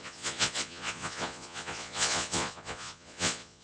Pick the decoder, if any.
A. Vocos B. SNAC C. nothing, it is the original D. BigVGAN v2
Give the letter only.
A